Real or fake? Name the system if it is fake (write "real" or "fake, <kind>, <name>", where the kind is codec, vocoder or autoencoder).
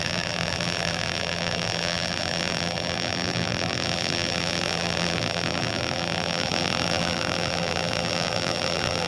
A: fake, vocoder, BigVGAN v2